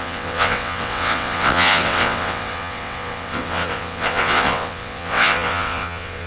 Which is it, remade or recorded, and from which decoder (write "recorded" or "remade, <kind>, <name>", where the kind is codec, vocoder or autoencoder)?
remade, vocoder, WaveNeXt